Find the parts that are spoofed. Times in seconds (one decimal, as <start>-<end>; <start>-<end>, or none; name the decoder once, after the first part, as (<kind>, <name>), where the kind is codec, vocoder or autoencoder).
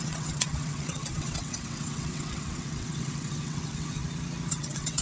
0.0-4.0 (vocoder, WaveNeXt); 4.5-5.0